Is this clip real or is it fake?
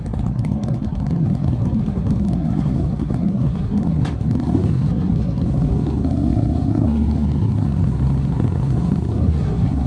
fake